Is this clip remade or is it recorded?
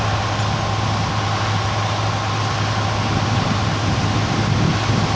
recorded